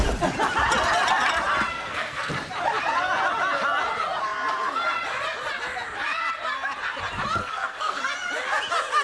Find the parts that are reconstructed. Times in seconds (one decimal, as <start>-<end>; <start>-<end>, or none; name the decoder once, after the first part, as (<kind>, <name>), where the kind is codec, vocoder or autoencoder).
1.7-2.3 (codec, SNAC); 7.4-8.0